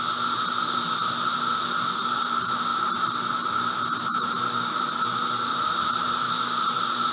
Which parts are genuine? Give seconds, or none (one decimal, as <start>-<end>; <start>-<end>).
0.0-5.5; 6.4-7.1